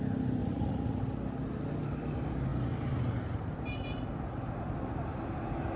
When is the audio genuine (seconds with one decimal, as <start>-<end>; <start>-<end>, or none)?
0.0-0.4; 1.0-5.8